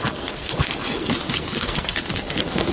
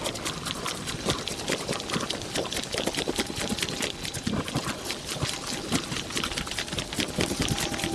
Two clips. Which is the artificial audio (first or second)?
first